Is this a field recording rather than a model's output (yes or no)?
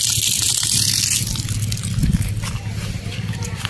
yes